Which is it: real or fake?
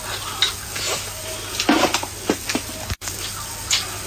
real